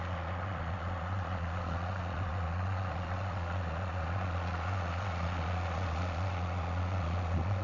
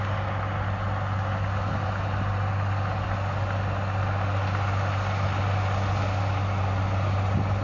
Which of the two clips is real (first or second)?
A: second